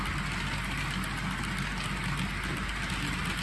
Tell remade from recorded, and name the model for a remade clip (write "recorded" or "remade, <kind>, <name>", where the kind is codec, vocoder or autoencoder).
recorded